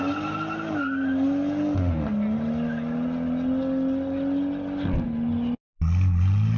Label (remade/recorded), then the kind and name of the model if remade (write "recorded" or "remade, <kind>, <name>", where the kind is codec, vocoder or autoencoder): recorded